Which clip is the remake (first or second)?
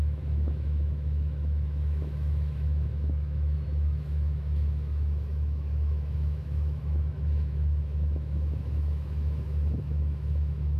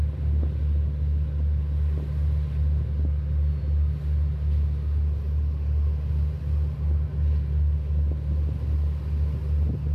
first